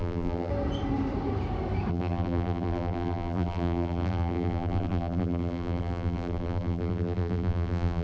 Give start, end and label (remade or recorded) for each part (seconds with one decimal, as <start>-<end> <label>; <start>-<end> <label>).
0.0-0.5 remade; 0.5-1.9 recorded; 1.9-8.0 remade